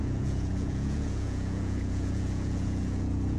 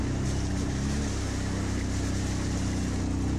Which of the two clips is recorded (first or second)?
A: second